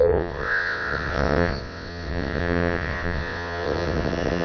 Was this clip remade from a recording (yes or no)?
yes